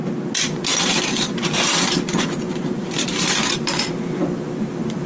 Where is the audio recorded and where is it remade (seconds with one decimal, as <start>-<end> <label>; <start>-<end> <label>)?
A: 0.0-0.7 recorded; 0.7-3.8 remade; 3.8-5.1 recorded